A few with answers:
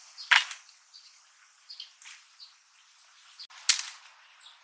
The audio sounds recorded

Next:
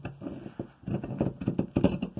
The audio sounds recorded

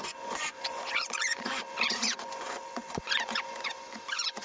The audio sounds remade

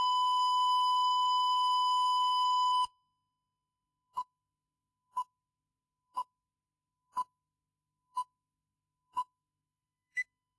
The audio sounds remade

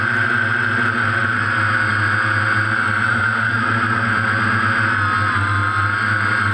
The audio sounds recorded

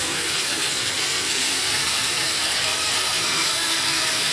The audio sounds remade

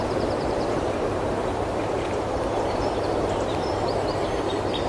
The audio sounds remade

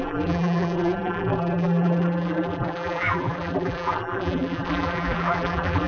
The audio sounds remade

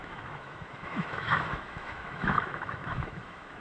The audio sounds remade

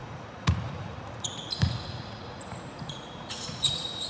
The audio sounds remade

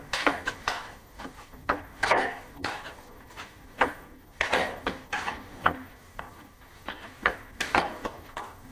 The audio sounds remade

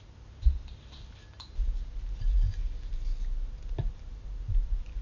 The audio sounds recorded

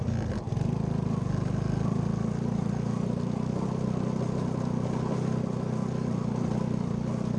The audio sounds recorded